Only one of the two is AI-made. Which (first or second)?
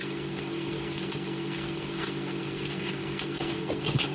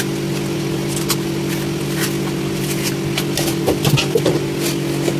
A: first